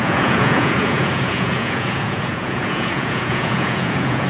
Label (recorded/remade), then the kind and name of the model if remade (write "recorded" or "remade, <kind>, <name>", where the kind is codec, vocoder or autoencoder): remade, vocoder, Vocos